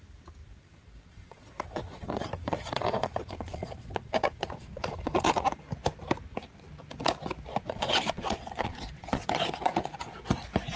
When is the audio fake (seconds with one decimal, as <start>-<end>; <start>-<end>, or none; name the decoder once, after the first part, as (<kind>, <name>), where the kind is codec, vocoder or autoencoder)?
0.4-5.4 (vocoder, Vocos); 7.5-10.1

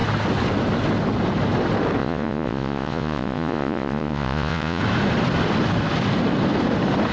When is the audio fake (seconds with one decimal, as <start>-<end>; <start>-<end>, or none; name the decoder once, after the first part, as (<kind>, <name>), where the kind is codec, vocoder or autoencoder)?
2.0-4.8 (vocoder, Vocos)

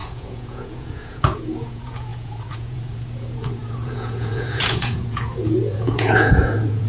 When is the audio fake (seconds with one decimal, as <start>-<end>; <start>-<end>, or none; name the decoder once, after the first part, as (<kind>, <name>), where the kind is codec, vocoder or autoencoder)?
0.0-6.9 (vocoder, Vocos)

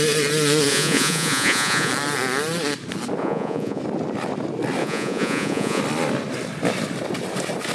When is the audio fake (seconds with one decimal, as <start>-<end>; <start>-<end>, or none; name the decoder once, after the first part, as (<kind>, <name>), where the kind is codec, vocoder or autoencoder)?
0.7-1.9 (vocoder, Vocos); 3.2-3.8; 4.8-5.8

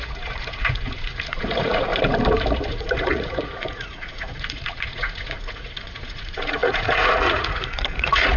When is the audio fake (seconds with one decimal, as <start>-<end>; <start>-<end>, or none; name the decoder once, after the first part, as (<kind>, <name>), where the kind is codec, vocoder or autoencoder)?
0.0-1.9 (vocoder, Vocos); 2.7-8.4